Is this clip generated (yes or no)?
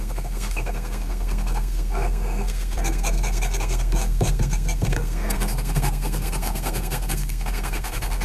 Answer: yes